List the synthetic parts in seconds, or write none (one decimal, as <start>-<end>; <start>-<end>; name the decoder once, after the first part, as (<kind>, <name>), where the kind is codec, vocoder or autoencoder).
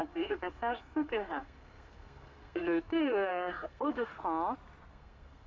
0.0-4.1 (codec, SNAC); 4.9-5.5